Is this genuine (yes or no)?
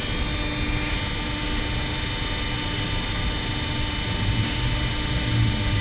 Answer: yes